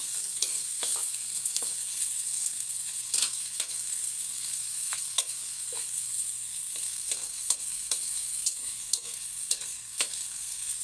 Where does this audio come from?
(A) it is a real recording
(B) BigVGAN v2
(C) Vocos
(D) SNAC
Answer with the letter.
D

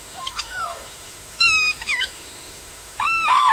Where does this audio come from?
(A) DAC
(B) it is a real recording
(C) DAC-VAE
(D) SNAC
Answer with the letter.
C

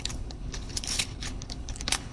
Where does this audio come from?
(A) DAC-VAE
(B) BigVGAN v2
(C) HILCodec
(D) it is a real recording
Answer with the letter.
C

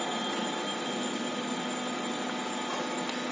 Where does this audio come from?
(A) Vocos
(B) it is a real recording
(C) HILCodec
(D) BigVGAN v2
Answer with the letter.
B